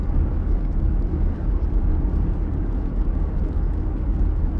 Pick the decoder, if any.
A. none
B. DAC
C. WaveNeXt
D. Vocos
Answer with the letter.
B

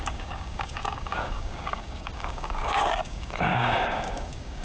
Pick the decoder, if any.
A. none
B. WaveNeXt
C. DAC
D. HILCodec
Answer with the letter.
C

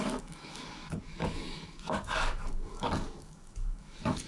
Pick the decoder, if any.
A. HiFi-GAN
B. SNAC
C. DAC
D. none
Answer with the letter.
C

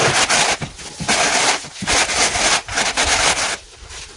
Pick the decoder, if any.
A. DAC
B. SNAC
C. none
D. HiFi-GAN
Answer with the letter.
C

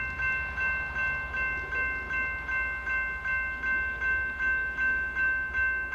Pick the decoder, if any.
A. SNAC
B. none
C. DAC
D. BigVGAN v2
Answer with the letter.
B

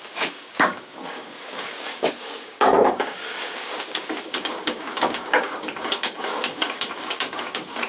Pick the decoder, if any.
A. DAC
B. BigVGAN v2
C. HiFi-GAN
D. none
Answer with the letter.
A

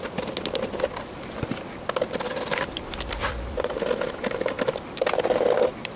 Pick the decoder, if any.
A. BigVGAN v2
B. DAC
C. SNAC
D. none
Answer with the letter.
D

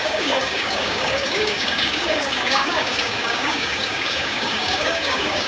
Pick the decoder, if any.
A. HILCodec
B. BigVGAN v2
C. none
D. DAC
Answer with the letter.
D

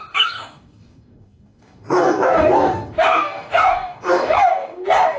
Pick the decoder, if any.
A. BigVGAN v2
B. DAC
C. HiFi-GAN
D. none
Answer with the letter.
B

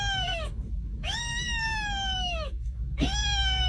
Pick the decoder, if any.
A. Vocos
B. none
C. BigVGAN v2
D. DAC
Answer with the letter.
D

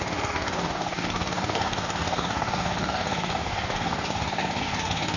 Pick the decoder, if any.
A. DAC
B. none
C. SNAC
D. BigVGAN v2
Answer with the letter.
A